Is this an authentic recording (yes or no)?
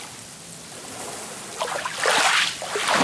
yes